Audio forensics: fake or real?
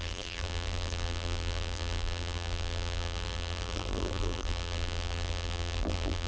fake